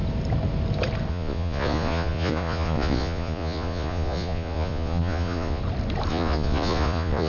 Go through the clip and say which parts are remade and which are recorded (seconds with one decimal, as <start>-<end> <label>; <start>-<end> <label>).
0.0-1.1 recorded; 1.1-5.6 remade; 5.6-6.1 recorded; 6.1-7.3 remade